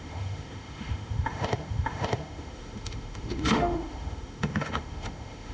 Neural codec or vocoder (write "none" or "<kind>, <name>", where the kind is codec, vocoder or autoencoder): autoencoder, DAC-VAE